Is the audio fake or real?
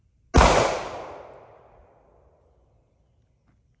real